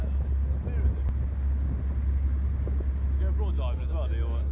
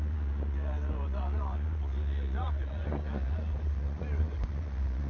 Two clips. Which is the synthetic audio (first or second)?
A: second